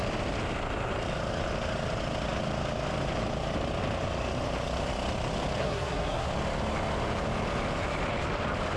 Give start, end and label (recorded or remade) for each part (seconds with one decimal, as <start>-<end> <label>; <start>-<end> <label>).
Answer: 0.0-5.6 recorded; 5.6-6.3 remade; 6.3-8.8 recorded